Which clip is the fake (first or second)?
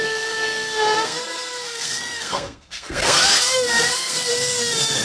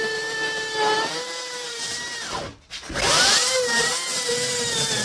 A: first